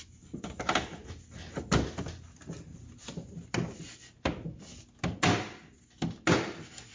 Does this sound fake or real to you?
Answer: real